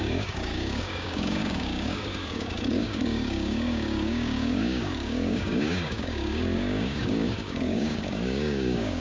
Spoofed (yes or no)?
yes